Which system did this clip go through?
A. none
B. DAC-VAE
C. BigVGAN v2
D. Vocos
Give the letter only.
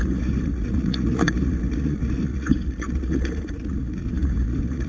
D